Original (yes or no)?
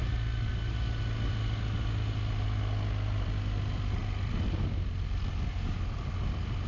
yes